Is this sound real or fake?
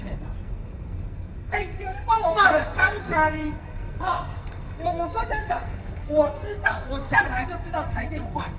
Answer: fake